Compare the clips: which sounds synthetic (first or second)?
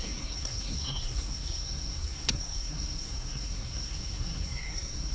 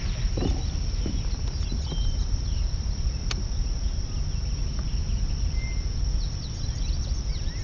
first